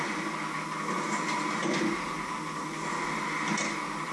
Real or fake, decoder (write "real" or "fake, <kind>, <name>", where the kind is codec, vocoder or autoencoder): real